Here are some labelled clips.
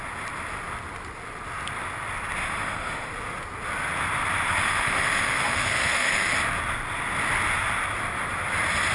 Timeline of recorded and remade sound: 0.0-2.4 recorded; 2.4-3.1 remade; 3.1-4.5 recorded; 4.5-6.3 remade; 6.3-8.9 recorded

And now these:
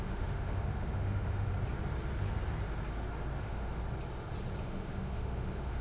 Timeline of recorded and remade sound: 0.0-1.5 remade; 1.5-3.4 recorded; 3.4-3.8 remade; 3.8-4.6 recorded; 4.6-5.8 remade

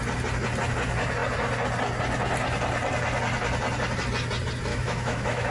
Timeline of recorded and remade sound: 0.0-4.7 recorded; 4.7-5.5 remade